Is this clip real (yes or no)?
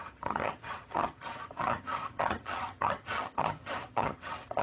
no